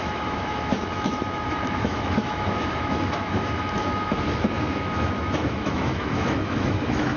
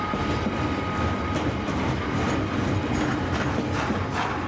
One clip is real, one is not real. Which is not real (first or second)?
first